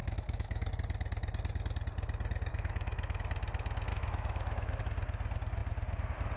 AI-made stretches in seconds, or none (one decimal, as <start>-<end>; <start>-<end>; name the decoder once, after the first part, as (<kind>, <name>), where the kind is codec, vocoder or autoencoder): 0.0-0.7 (autoencoder, DAC-VAE); 2.5-3.2; 3.9-4.8